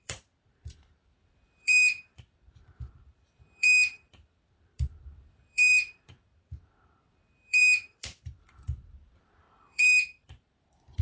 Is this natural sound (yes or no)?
no